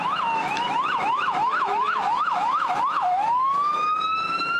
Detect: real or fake fake